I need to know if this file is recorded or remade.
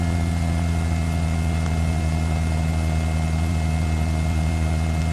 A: recorded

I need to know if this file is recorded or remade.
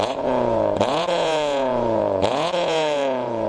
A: remade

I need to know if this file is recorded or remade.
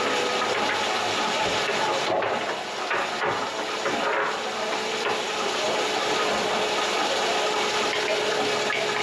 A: recorded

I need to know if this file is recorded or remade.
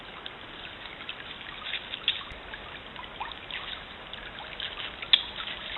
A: recorded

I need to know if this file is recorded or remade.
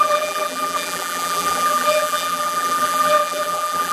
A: remade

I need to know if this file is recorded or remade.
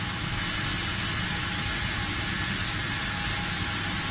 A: recorded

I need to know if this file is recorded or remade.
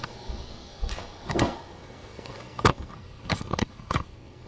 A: remade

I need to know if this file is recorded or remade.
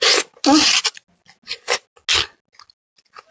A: recorded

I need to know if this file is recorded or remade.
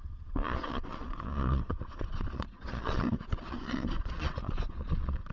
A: remade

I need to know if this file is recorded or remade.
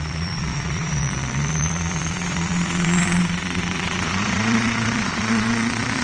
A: remade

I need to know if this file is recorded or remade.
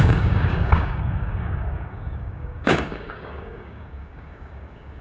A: remade